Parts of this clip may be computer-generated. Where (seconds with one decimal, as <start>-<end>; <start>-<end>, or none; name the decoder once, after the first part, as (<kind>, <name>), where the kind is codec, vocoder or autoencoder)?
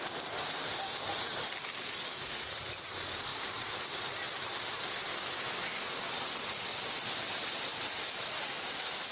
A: none